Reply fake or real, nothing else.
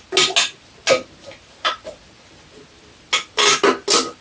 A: real